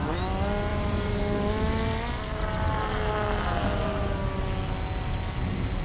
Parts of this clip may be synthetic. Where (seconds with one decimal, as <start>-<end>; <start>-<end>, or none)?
0.7-1.2